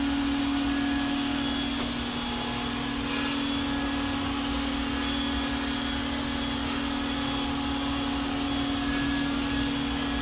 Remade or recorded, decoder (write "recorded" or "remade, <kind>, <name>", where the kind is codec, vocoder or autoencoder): recorded